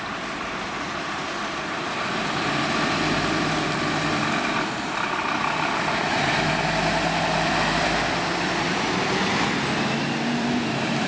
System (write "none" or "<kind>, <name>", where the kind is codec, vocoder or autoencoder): vocoder, BigVGAN v2